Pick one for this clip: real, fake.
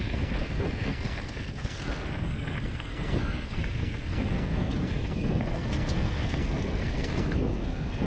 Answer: fake